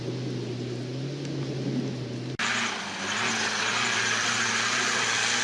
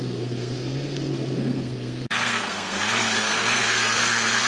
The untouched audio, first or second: first